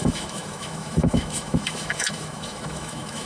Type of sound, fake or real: fake